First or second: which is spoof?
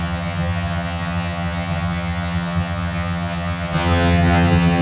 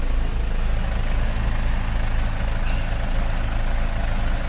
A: first